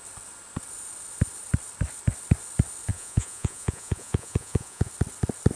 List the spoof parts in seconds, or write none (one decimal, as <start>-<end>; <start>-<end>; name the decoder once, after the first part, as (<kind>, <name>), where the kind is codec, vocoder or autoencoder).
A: 2.9-4.9 (vocoder, Vocos)